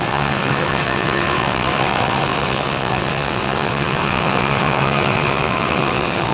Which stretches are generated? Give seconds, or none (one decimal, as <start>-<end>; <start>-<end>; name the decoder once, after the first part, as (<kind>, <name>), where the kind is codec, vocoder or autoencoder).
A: 0.0-6.3 (vocoder, WaveNeXt)